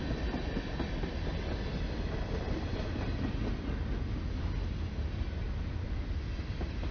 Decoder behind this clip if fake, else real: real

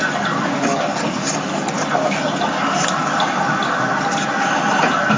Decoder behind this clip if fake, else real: real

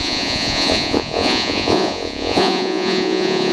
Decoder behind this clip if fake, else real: fake, vocoder, Vocos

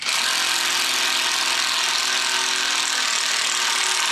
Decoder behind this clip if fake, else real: real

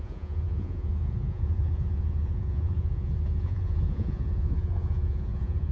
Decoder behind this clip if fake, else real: fake, vocoder, Vocos